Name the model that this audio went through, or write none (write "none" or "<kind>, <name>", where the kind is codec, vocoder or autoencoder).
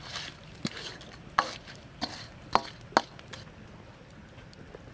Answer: none